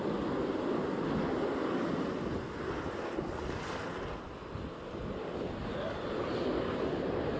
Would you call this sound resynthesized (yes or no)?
no